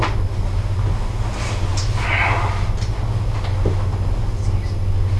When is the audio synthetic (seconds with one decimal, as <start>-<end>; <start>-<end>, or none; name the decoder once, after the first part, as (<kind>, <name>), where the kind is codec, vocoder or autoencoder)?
none